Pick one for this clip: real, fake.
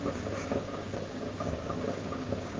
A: fake